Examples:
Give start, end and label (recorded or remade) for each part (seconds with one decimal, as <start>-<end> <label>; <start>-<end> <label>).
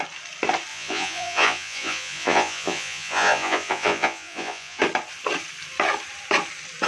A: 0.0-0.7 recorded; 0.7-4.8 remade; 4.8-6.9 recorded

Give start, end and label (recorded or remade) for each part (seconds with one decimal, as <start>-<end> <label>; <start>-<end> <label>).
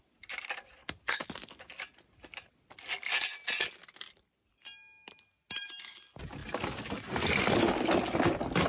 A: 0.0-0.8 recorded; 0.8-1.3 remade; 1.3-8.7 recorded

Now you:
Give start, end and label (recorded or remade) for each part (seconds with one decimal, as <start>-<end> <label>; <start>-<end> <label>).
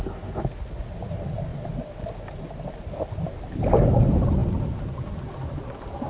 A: 0.0-6.1 recorded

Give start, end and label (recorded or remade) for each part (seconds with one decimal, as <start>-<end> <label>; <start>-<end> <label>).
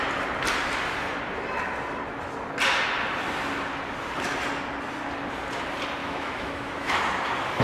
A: 0.0-6.0 recorded; 6.0-7.0 remade; 7.0-7.6 recorded